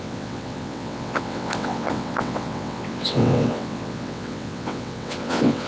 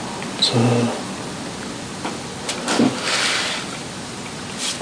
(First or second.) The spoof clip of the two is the first